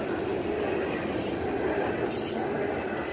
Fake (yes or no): no